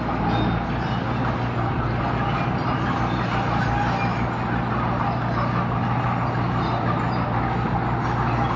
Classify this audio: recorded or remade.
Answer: recorded